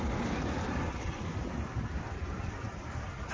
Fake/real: real